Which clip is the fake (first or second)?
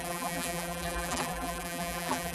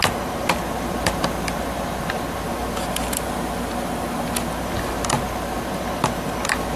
first